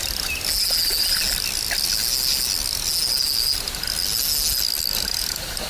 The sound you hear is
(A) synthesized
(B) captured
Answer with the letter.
B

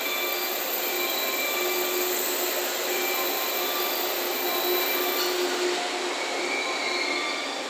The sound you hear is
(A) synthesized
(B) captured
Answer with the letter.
B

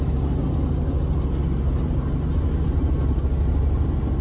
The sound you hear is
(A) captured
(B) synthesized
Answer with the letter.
A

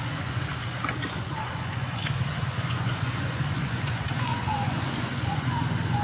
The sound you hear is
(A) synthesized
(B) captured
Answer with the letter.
A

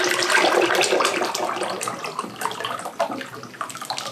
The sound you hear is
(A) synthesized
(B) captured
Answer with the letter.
B